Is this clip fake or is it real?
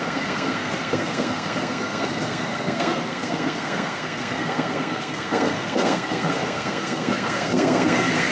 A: fake